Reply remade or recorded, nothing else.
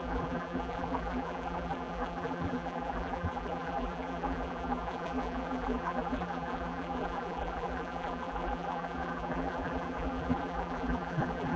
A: remade